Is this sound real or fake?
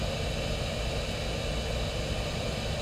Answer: real